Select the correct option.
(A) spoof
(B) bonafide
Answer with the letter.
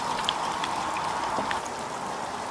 B